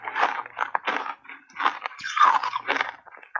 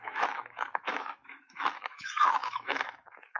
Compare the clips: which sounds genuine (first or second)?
first